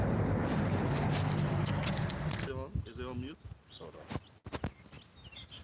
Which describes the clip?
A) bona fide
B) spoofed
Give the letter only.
A